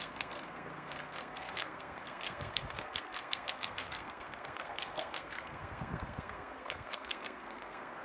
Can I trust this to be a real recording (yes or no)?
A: no